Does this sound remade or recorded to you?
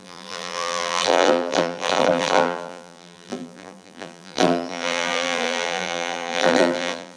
remade